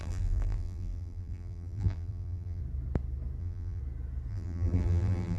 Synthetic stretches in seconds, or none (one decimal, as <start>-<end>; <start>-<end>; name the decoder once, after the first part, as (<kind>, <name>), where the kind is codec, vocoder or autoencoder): 0.0-2.6 (vocoder, BigVGAN v2); 3.4-3.8; 4.3-5.4